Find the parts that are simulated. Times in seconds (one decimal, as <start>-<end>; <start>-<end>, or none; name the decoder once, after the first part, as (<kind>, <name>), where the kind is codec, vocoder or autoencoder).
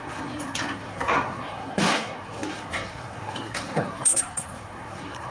0.0-5.3 (codec, SNAC)